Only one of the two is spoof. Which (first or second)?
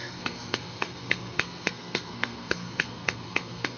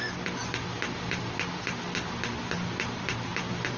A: first